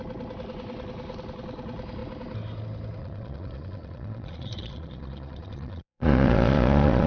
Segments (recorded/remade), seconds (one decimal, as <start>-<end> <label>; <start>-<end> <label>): 0.0-3.0 recorded; 3.0-7.1 remade